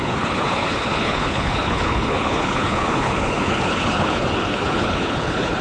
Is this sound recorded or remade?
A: remade